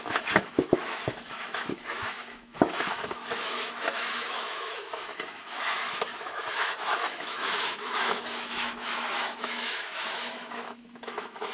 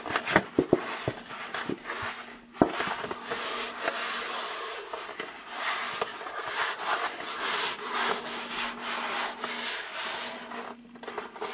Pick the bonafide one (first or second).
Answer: second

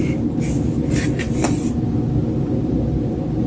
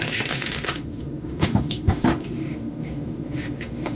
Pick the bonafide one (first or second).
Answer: first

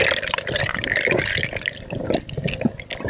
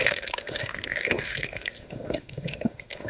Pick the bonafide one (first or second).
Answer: first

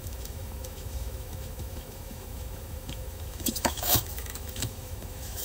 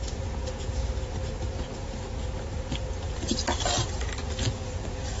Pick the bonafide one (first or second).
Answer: second